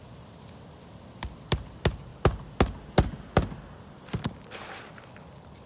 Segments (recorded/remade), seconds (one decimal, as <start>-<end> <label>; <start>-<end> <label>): 0.0-5.7 recorded